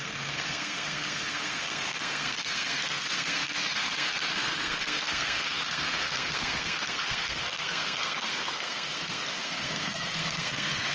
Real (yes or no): no